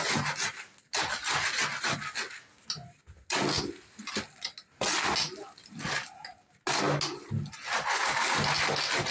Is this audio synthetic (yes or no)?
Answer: no